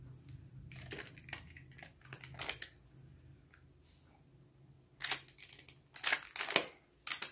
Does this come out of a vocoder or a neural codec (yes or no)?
no